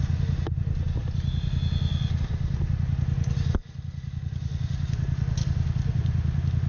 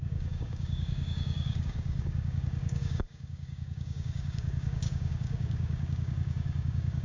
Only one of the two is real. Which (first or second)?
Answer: first